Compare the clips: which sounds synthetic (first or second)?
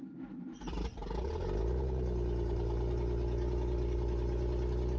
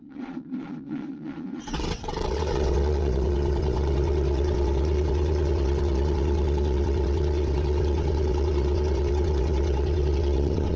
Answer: second